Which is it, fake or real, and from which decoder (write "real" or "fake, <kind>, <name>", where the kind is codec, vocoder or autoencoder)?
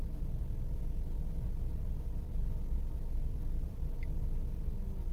real